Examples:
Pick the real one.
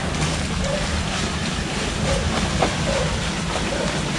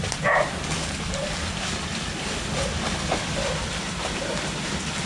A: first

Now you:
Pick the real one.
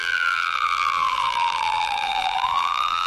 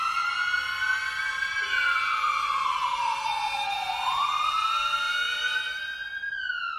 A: second